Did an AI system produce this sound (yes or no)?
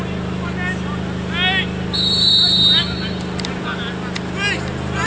no